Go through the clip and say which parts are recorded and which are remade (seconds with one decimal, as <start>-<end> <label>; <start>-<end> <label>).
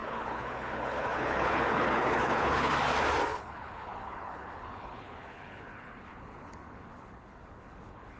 0.0-2.7 remade; 2.7-3.3 recorded; 3.3-8.2 remade